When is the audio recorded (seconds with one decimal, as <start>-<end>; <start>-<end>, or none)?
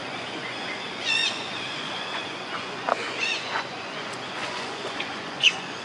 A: none